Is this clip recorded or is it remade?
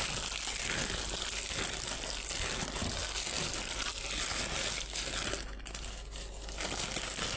recorded